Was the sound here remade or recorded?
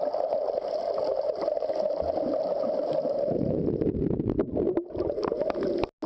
recorded